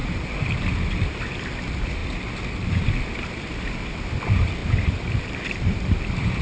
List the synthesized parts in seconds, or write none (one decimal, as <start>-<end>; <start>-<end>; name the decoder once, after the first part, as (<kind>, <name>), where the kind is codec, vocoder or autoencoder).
0.0-2.0 (vocoder, BigVGAN v2); 3.2-6.4